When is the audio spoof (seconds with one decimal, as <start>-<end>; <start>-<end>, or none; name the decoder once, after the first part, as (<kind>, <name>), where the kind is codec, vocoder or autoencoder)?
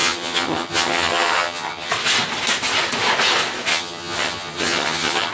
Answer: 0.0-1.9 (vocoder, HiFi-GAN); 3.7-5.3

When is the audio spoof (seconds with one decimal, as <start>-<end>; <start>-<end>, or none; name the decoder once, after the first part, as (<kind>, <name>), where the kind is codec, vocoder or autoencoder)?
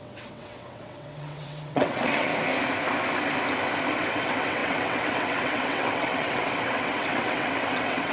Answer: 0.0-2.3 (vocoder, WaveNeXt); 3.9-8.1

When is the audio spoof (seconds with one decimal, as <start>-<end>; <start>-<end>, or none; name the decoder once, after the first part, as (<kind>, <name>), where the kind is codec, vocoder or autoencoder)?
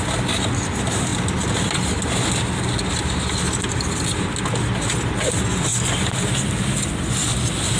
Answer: none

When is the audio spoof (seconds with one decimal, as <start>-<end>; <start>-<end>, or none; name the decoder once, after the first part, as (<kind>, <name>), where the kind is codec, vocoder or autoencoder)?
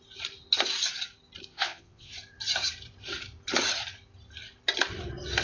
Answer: 1.5-2.1 (vocoder, Vocos)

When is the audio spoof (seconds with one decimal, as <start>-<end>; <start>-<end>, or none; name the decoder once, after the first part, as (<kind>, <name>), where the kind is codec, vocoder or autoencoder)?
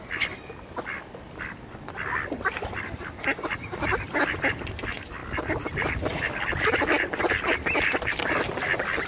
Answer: none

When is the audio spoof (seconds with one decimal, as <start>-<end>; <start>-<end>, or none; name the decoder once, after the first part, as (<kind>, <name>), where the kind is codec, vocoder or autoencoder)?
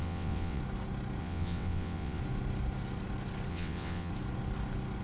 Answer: 0.0-0.6 (vocoder, WaveNeXt); 1.2-2.2; 3.5-4.1